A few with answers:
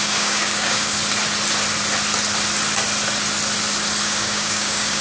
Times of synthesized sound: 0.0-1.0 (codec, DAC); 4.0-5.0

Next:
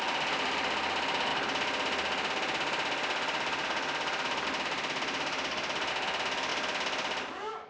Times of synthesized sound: none

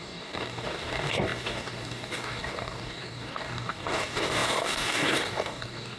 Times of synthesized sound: 0.0-6.0 (codec, DAC)

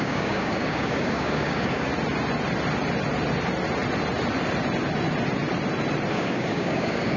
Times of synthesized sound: 0.0-1.9 (codec, DAC); 6.1-7.2

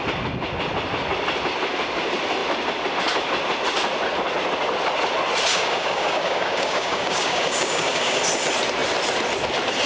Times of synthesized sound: 5.5-8.2 (codec, DAC)